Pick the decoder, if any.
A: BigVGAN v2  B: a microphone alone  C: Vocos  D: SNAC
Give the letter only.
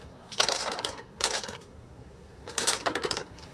D